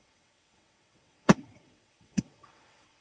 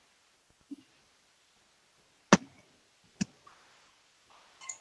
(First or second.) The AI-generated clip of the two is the first